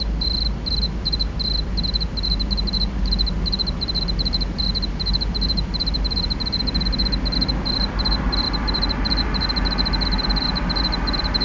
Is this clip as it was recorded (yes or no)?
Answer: yes